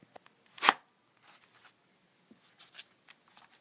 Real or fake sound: real